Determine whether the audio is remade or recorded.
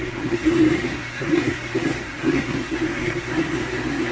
remade